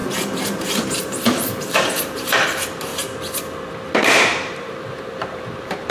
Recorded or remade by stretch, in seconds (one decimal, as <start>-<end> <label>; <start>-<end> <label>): 0.0-0.7 recorded; 0.7-2.9 remade; 2.9-3.9 recorded; 3.9-5.9 remade